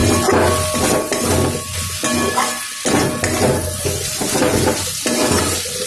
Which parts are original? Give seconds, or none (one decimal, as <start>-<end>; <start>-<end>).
0.0-5.9